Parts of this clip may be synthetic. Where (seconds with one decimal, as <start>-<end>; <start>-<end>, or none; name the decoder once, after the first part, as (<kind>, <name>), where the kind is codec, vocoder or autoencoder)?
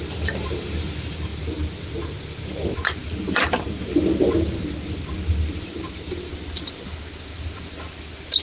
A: 0.0-1.3 (vocoder, BigVGAN v2); 2.4-4.2; 4.8-6.3; 7.7-8.4